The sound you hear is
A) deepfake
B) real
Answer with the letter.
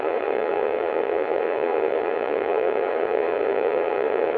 A